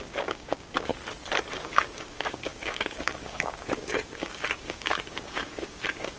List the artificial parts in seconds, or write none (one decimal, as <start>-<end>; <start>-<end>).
0.0-0.9; 1.5-6.2